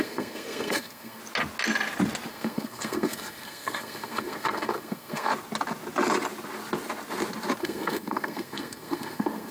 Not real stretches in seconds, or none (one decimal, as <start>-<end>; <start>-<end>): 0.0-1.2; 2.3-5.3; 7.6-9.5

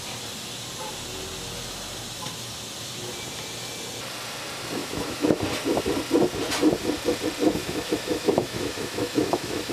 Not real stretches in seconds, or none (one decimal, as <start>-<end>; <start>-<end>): 4.8-5.4; 7.6-9.7

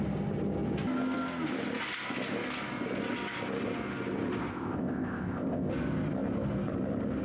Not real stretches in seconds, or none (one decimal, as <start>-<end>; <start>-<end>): 4.5-5.7

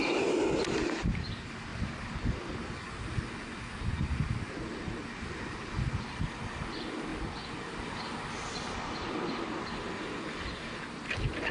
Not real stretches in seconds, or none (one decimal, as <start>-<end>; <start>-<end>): none

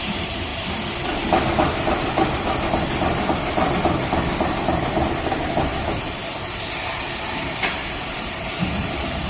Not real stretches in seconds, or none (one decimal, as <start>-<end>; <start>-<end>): 0.0-0.5; 5.6-6.2; 7.2-9.3